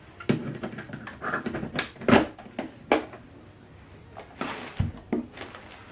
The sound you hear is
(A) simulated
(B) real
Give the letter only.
B